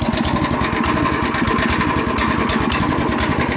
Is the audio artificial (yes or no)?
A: no